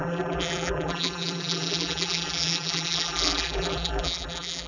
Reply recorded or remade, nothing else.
remade